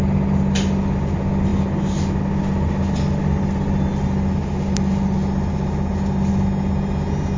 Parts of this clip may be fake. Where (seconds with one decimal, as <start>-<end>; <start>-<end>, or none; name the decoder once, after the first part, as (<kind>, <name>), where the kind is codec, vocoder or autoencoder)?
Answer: none